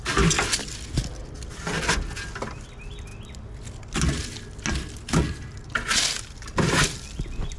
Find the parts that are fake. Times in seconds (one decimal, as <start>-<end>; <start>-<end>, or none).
none